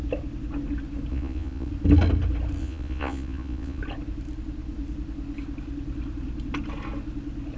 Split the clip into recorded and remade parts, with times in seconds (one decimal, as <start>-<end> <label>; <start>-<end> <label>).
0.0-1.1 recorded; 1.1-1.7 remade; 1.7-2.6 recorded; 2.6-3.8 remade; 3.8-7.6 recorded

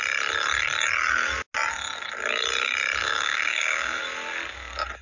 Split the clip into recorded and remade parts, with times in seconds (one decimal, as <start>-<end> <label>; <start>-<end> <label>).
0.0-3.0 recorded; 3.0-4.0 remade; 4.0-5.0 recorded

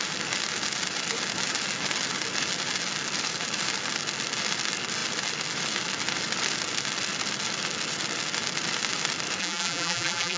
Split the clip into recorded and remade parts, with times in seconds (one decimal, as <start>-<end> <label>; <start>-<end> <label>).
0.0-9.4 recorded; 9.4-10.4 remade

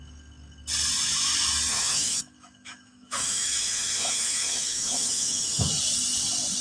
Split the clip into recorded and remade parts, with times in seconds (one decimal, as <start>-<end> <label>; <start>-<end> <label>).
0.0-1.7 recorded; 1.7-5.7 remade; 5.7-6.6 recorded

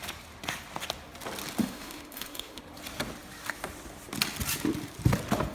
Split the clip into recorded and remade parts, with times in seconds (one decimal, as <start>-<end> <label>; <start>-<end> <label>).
0.0-1.6 recorded; 1.6-2.6 remade; 2.6-5.5 recorded

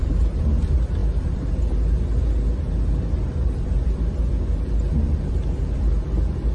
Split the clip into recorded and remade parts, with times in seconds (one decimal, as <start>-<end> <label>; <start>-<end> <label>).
0.0-6.5 recorded

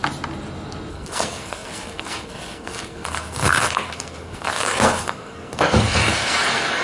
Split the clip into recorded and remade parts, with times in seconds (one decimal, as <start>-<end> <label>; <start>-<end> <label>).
0.0-0.9 recorded; 0.9-6.8 remade

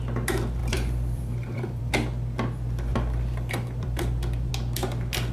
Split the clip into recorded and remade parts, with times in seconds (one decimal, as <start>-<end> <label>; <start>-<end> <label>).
0.0-0.6 recorded; 0.6-1.9 remade; 1.9-2.9 recorded; 2.9-4.5 remade; 4.5-5.3 recorded